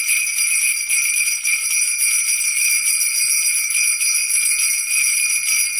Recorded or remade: recorded